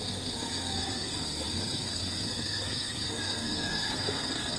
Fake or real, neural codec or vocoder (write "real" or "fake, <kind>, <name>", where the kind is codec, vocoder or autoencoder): fake, codec, SNAC